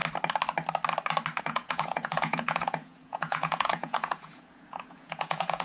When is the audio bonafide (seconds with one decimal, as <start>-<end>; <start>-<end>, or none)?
0.0-1.4